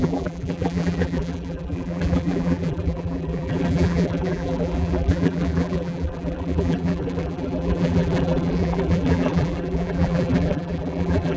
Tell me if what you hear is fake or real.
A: fake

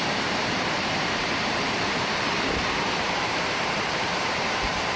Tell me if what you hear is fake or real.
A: fake